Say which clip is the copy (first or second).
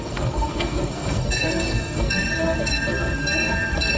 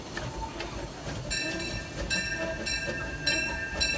first